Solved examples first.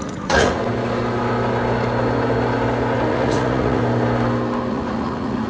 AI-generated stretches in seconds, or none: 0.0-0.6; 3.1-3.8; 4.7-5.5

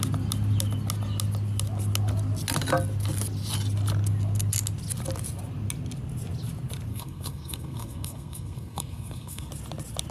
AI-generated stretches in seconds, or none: 6.9-9.5

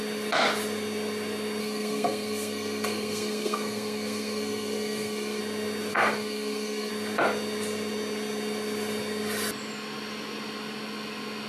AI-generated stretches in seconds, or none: 1.6-5.4; 5.9-6.9

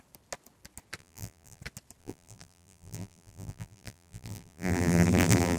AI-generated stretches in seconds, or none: 1.0-1.6; 2.0-5.6

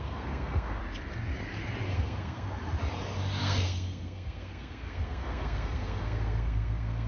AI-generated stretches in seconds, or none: 0.0-0.8; 1.9-2.6; 3.4-7.1

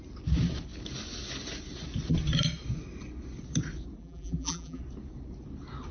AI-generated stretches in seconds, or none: 4.0-4.8

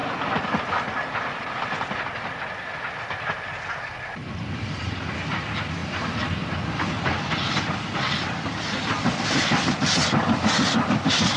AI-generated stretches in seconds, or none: 3.9-11.4

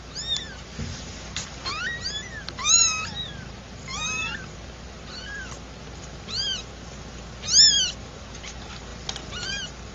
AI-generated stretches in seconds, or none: 0.0-6.7; 7.7-9.9